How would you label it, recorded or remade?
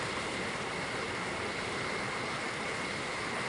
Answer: remade